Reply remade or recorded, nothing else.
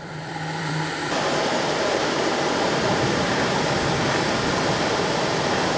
remade